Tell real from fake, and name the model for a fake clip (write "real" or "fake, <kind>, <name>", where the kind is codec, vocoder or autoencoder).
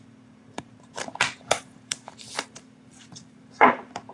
fake, vocoder, BigVGAN v2